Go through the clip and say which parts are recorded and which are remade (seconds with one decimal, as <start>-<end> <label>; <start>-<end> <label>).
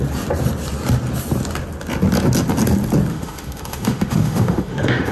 0.0-3.1 recorded; 3.1-5.1 remade